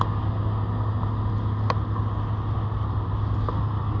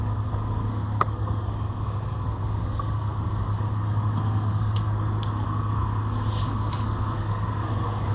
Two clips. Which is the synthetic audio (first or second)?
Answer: second